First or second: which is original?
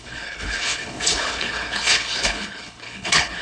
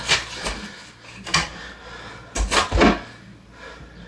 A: second